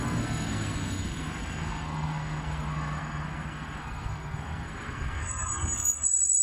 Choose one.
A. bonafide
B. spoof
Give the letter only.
B